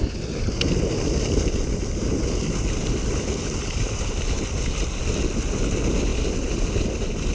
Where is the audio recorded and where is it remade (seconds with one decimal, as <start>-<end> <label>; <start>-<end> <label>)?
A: 0.0-2.8 recorded; 2.8-5.0 remade; 5.0-6.1 recorded; 6.1-7.3 remade

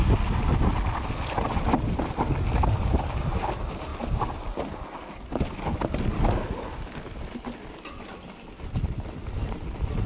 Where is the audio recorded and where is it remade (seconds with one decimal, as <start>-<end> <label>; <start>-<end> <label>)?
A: 0.0-9.2 recorded; 9.2-10.1 remade

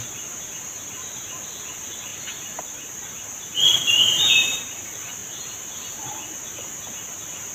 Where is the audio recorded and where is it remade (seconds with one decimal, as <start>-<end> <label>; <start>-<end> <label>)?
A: 0.0-2.1 recorded; 2.1-2.6 remade; 2.6-3.7 recorded; 3.7-4.4 remade; 4.4-5.2 recorded; 5.2-5.7 remade; 5.7-7.5 recorded

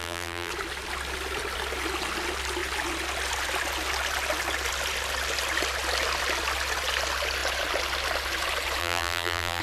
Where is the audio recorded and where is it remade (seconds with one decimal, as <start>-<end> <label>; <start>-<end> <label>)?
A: 0.0-0.5 remade; 0.5-8.8 recorded; 8.8-9.6 remade